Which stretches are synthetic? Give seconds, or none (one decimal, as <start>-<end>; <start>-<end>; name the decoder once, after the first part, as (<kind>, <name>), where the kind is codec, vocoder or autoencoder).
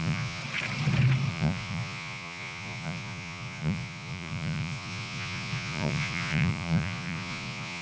0.0-0.4 (vocoder, Vocos); 1.3-7.8